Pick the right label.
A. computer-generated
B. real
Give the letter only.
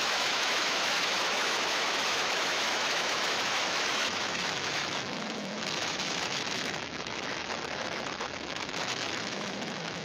A